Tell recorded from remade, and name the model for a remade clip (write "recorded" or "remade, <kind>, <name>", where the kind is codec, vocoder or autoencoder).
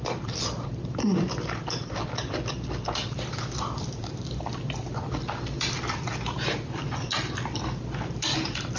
remade, vocoder, BigVGAN v2